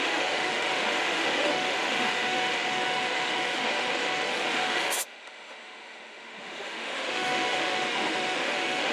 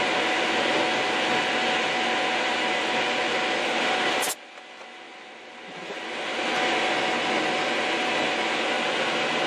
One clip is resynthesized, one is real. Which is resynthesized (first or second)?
first